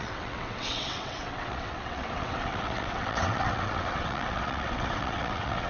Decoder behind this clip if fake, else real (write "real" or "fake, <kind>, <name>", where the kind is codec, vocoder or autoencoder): fake, vocoder, WaveNeXt